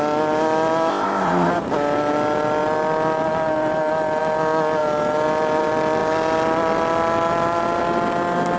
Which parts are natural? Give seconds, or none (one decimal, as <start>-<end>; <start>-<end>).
0.0-0.9; 1.5-8.6